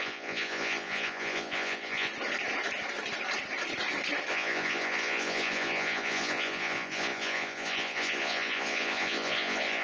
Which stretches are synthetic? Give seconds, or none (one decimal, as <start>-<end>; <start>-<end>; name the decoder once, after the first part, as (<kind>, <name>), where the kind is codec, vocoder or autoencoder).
0.0-2.1 (vocoder, Vocos); 4.3-9.8